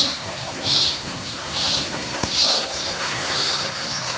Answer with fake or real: fake